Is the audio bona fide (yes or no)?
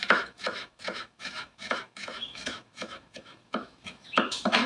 no